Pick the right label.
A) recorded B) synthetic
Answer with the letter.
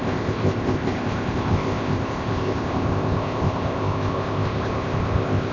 B